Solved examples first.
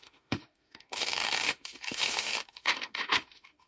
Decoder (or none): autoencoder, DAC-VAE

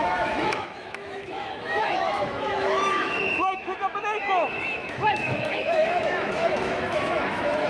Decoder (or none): autoencoder, DAC-VAE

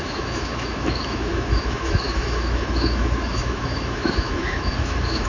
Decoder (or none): autoencoder, DAC-VAE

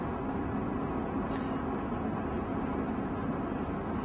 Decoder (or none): none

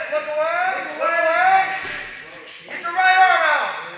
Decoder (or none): none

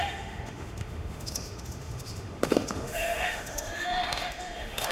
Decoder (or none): autoencoder, DAC-VAE